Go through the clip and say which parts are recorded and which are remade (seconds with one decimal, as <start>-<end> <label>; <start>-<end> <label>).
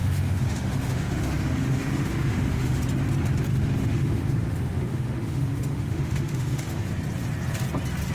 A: 0.0-2.8 remade; 2.8-3.5 recorded; 3.5-6.8 remade; 6.8-8.1 recorded